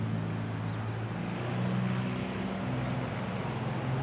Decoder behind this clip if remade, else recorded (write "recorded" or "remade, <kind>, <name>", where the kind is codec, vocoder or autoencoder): recorded